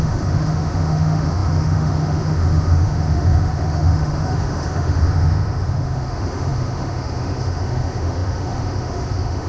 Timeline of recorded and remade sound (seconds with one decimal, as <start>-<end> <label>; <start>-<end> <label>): 0.0-9.5 remade